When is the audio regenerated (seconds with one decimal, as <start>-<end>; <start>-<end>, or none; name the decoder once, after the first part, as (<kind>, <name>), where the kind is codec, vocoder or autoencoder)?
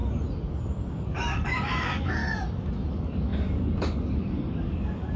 0.9-2.2 (codec, DAC); 2.9-5.2